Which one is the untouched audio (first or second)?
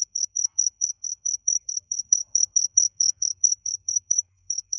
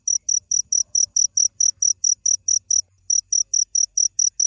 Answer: second